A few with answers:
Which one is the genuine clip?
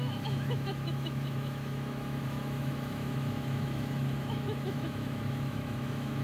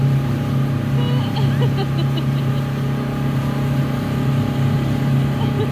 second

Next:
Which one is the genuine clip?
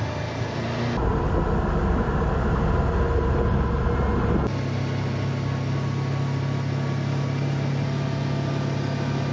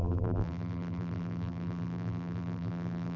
first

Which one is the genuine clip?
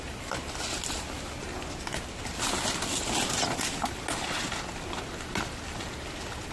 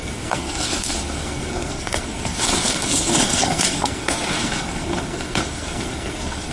first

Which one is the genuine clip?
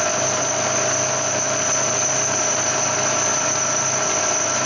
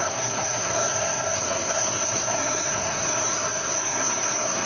first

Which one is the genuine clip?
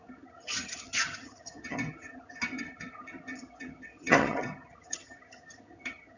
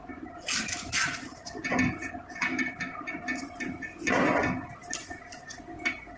second